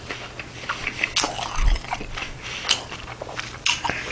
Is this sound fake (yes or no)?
no